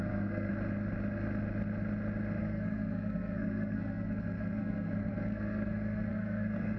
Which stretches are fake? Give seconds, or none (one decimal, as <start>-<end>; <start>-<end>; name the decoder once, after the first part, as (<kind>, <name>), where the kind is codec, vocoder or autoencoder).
0.0-0.5 (codec, SNAC); 2.4-6.8